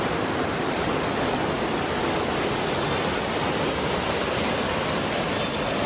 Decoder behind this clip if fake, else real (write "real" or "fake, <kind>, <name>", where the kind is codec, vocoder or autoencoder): real